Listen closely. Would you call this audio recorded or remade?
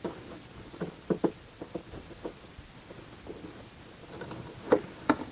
recorded